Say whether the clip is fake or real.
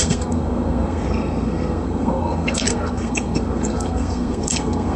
fake